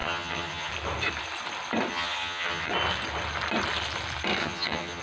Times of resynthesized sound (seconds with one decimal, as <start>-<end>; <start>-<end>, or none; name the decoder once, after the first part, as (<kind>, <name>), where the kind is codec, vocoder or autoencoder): 0.0-0.7 (vocoder, HiFi-GAN); 1.9-2.7; 4.4-5.0